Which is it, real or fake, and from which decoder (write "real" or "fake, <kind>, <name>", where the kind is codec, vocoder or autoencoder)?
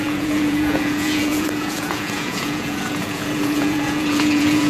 fake, vocoder, Vocos